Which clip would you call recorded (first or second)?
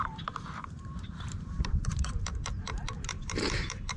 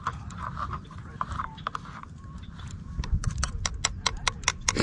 second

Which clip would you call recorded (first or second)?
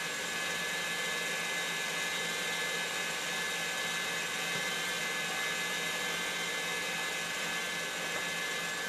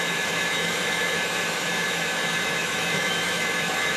first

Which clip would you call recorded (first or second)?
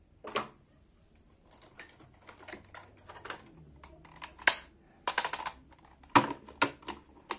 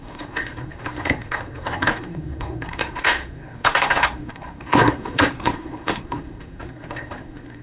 first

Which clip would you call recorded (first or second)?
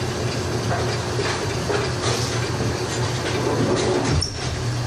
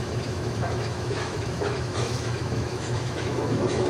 first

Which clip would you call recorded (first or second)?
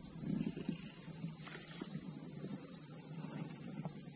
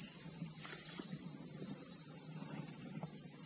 first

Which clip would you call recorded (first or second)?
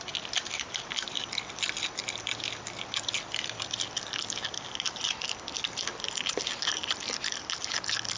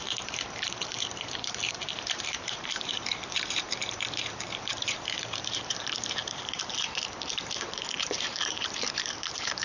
first